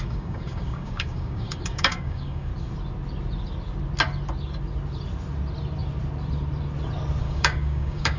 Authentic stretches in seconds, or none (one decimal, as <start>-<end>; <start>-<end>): 2.5-7.2